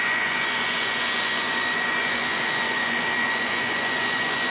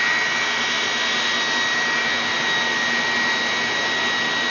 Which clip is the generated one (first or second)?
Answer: first